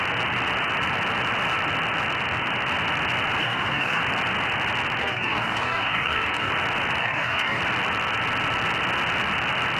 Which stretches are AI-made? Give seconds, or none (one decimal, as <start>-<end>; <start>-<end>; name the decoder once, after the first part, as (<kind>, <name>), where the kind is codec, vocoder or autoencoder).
3.4-4.0 (codec, DAC); 5.0-6.5; 7.0-7.6